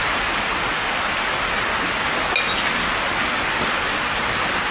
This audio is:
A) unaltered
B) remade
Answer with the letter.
A